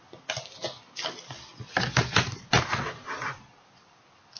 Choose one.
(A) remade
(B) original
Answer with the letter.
B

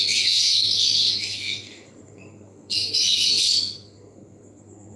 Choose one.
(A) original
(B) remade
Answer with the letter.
B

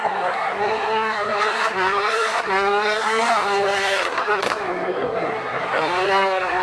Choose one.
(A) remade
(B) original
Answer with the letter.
A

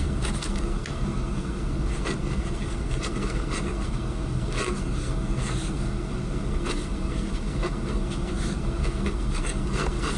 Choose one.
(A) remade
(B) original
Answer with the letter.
A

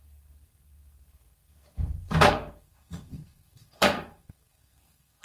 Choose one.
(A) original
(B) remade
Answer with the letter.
B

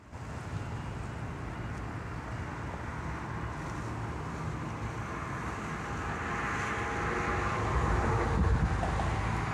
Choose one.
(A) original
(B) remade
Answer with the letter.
A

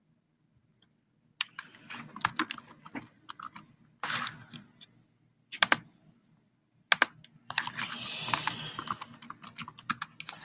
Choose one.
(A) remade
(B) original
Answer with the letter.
B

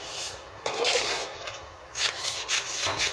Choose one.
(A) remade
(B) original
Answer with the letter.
A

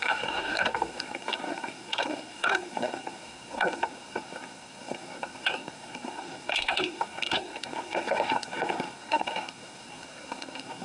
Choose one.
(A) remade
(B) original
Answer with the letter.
A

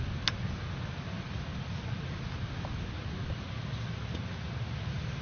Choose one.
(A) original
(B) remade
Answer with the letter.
A